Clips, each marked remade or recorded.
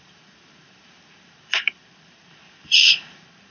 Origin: remade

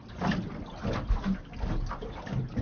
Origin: recorded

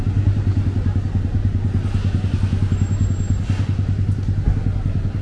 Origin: recorded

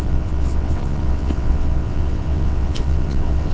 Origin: remade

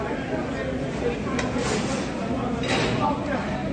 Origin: recorded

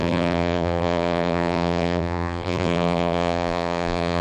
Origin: remade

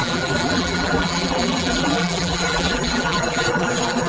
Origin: remade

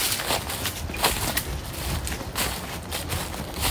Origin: recorded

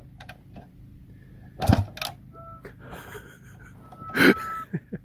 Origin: recorded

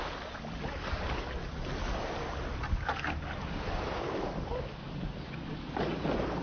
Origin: recorded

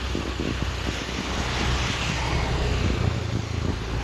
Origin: recorded